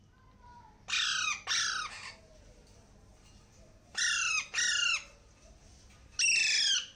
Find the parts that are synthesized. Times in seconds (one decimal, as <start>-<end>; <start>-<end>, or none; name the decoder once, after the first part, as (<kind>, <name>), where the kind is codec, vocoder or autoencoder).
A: none